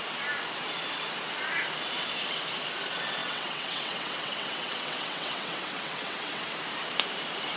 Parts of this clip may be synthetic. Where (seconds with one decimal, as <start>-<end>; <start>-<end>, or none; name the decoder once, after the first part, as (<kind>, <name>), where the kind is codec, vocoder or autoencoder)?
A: 3.2-6.5 (vocoder, WaveNeXt)